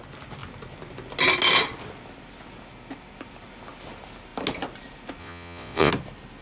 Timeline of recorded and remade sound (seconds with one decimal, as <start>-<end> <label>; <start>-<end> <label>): 0.0-5.2 recorded; 5.2-5.9 remade; 5.9-6.4 recorded